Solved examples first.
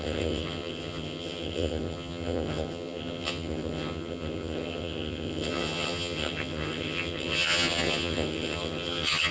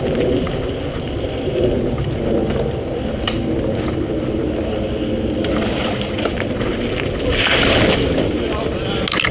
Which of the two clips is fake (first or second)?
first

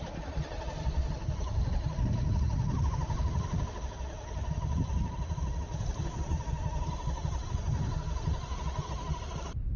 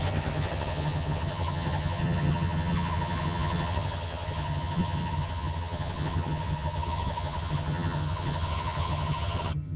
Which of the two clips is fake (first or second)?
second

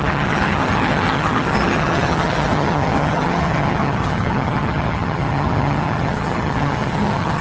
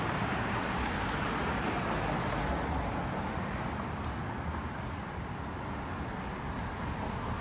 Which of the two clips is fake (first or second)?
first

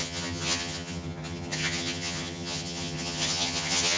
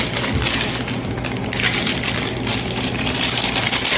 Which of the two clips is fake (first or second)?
first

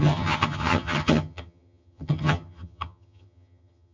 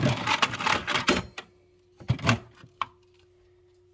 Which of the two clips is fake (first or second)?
first